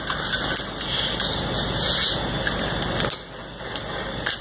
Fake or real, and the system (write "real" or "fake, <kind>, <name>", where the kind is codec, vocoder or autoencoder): real